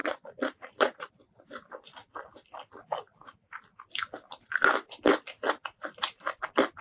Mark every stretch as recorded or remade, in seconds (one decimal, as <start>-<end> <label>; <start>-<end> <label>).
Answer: 0.0-1.1 remade; 1.1-6.8 recorded